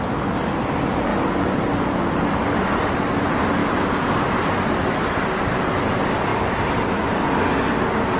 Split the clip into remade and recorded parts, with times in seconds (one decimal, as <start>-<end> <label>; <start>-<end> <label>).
0.0-6.3 recorded; 6.3-6.8 remade; 6.8-8.2 recorded